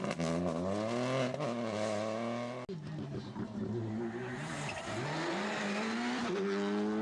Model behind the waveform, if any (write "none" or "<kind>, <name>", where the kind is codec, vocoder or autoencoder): none